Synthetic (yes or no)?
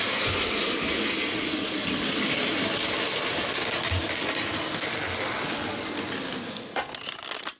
no